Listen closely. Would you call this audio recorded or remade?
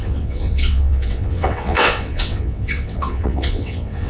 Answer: remade